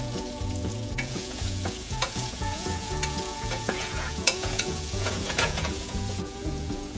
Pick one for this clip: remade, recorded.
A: remade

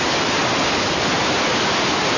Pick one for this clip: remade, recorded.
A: recorded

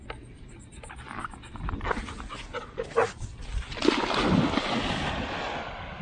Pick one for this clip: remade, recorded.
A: recorded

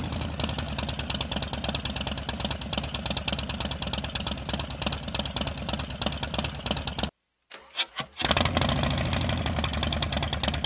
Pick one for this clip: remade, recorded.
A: recorded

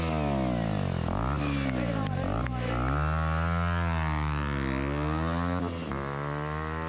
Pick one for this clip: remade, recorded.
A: recorded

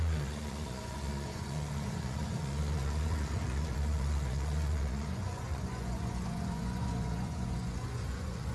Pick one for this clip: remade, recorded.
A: remade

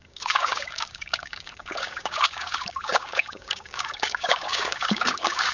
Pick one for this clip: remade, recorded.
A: remade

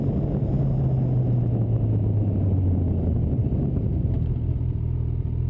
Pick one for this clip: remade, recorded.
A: recorded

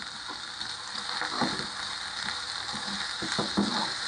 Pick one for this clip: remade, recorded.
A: recorded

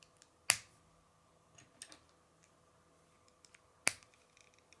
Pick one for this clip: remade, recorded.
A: recorded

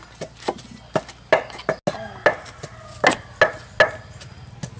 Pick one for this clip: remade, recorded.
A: recorded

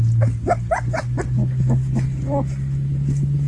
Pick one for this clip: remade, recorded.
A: recorded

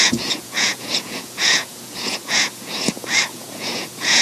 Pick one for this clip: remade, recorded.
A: remade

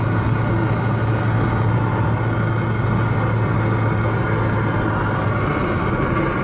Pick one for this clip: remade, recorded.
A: recorded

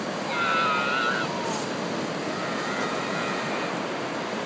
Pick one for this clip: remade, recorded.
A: recorded